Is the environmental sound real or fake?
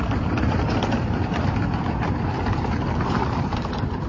fake